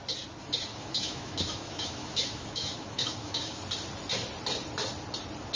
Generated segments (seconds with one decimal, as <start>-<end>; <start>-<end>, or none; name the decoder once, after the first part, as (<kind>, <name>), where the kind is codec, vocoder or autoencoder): 0.7-3.6 (autoencoder, DAC-VAE)